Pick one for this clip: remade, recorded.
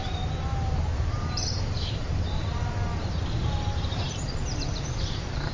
remade